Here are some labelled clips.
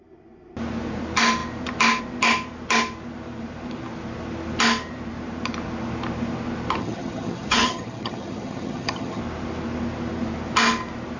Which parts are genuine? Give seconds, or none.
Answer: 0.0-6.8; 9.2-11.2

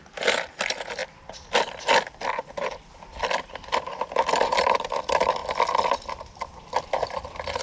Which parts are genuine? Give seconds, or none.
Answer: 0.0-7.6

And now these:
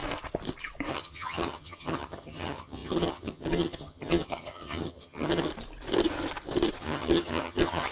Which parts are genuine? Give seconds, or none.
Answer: 0.0-0.9; 5.5-6.8